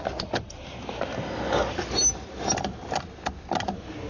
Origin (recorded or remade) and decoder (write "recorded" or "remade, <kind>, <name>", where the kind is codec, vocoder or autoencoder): recorded